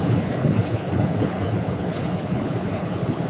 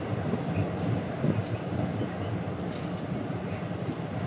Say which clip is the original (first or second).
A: second